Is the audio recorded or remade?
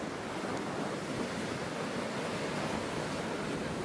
recorded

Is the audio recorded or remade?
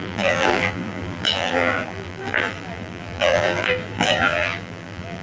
remade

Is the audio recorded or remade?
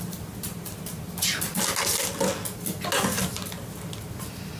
recorded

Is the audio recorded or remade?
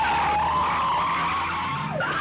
recorded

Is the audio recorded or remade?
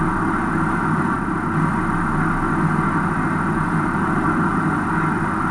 recorded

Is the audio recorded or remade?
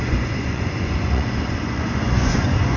remade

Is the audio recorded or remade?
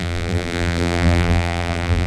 remade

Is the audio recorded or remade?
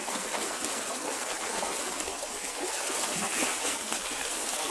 remade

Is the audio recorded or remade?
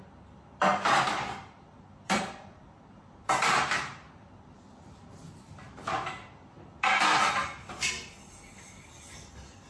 recorded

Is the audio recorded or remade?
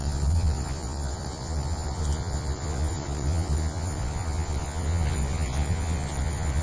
remade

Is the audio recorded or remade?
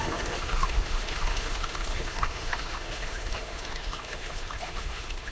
remade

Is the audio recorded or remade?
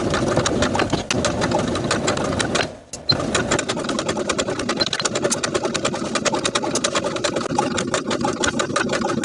recorded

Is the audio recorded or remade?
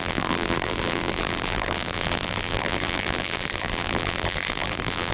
remade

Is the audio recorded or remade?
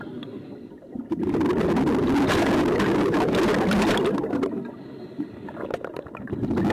recorded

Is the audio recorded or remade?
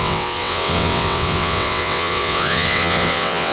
remade